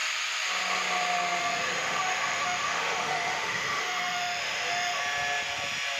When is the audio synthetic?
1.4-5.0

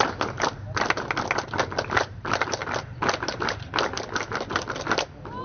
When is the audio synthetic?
none